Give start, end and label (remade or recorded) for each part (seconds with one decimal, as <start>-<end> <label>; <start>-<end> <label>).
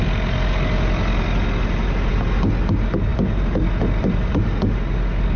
0.0-3.1 recorded; 3.1-4.4 remade; 4.4-5.4 recorded